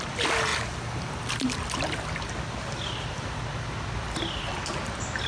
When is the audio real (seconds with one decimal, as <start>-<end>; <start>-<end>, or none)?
0.0-5.3

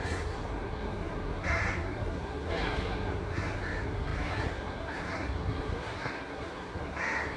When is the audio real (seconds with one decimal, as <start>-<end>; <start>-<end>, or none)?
none

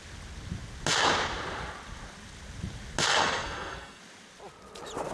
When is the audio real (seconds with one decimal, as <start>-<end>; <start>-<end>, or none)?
0.0-3.1; 4.0-5.1

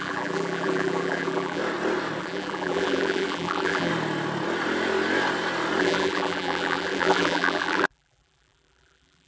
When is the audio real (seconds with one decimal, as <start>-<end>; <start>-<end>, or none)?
1.6-2.2; 3.9-5.8

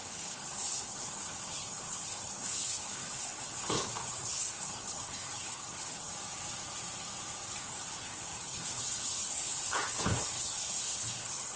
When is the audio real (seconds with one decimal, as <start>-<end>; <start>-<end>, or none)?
6.1-7.6

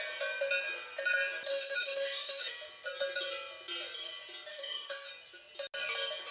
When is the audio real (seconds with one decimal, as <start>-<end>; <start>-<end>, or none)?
0.0-1.5; 2.5-4.5; 5.1-6.3

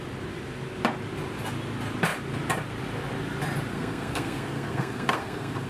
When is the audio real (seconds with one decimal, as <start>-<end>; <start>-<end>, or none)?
0.0-3.7

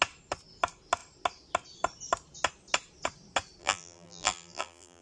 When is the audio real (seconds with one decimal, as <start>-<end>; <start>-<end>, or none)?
0.0-3.6